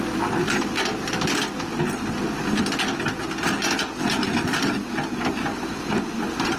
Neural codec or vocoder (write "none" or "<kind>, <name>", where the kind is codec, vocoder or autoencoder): none